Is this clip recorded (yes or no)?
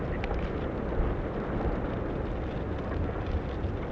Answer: yes